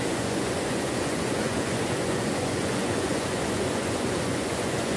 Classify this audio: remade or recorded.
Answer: remade